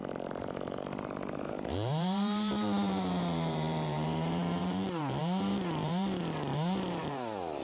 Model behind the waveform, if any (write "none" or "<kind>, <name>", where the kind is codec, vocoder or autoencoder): vocoder, BigVGAN v2